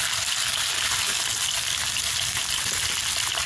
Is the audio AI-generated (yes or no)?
no